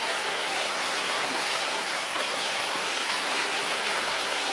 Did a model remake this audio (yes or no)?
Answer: yes